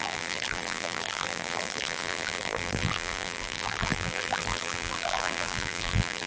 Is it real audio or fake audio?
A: fake